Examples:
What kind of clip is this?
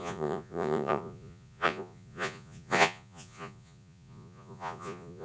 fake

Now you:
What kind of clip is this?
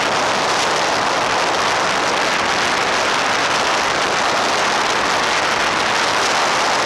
real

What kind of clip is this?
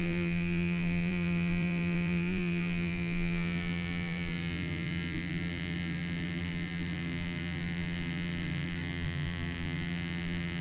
fake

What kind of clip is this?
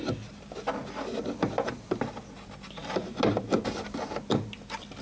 real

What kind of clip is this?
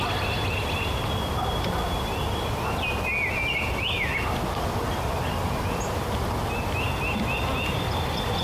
real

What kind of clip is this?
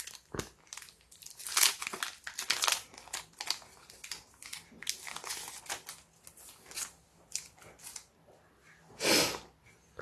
real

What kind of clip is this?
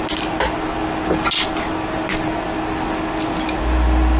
real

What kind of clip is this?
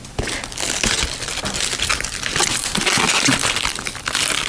real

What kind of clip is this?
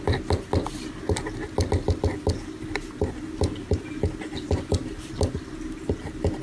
real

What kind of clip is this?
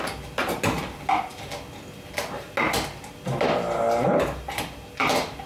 real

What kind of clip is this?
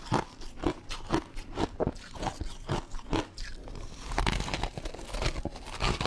real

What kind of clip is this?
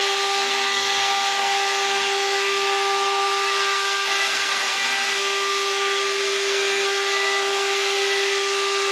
fake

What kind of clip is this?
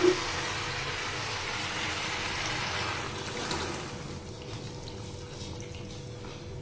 real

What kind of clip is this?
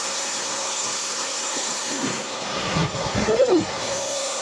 fake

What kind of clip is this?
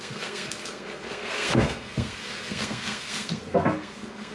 fake